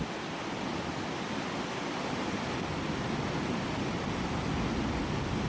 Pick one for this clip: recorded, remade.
recorded